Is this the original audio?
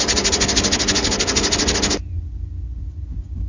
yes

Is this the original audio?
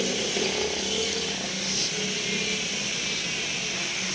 yes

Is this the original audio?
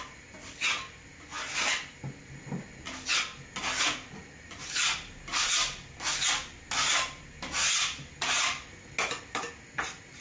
yes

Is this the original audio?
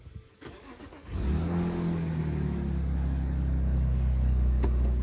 no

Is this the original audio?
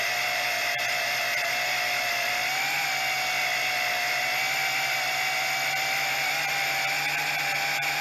yes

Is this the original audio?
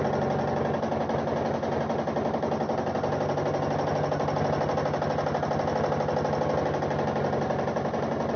yes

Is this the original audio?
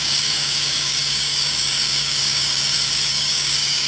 no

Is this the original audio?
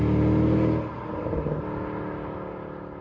yes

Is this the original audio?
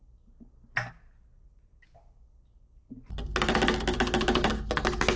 yes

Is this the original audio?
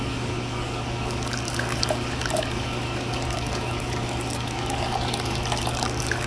no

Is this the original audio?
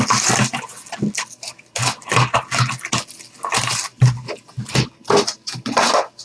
yes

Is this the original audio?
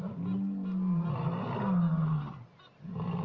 yes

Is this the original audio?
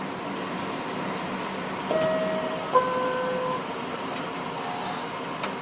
yes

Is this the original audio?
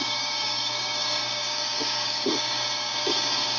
no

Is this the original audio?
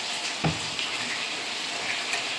yes